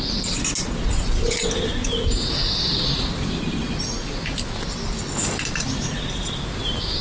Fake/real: real